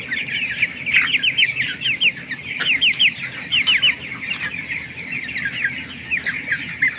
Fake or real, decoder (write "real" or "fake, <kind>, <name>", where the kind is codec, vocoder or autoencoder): real